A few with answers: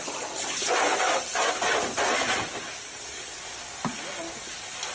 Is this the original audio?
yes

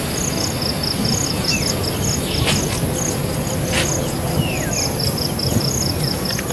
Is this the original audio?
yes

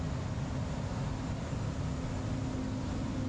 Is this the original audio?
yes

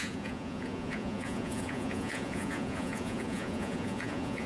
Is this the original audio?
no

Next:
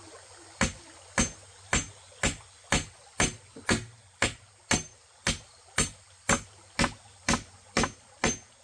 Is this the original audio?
yes